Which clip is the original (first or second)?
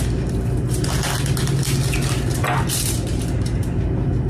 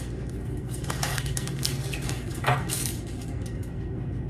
first